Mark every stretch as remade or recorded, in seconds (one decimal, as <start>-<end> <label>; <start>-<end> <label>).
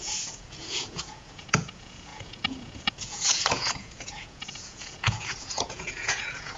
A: 0.0-6.6 remade